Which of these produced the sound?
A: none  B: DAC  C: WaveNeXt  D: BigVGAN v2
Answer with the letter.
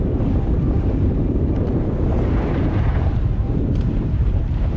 D